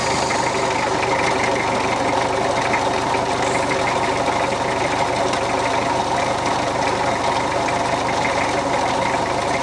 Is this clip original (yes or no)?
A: yes